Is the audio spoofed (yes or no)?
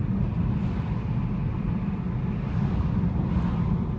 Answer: no